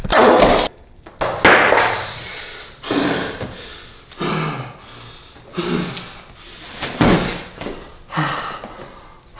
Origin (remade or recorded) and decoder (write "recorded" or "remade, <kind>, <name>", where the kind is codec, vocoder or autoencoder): recorded